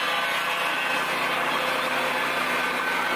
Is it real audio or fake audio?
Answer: real